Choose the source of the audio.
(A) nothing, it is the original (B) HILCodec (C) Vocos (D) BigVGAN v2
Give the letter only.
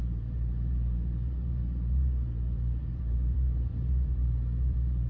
D